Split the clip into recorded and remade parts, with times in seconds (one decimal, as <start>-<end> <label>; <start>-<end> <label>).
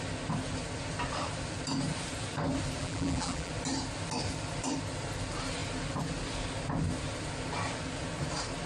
0.0-2.8 recorded; 2.8-3.5 remade; 3.5-8.7 recorded